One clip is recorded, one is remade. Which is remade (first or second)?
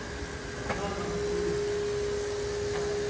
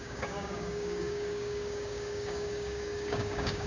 second